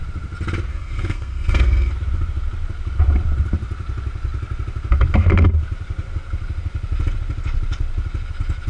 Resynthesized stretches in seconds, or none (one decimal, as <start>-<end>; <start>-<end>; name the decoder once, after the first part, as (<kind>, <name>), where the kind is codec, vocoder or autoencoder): 0.7-1.9 (codec, SNAC)

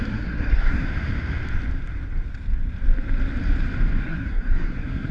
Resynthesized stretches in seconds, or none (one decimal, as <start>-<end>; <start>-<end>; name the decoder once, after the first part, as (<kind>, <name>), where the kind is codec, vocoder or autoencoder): 0.0-0.9 (codec, SNAC); 4.0-5.1

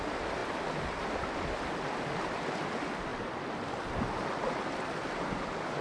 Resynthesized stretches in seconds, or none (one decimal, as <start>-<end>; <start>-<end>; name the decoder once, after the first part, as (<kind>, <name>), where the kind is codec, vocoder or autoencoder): none

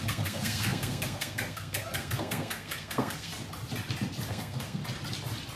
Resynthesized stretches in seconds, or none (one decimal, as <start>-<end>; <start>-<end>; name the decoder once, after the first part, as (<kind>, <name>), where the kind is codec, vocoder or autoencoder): 0.0-3.3 (codec, SNAC); 4.3-4.8

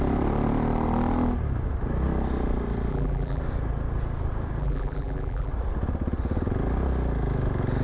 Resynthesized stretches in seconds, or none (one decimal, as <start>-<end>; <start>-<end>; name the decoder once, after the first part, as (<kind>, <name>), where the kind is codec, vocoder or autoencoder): 2.9-3.4 (vocoder, BigVGAN v2); 4.6-5.5